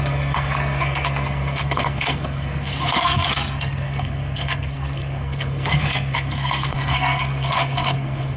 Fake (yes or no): yes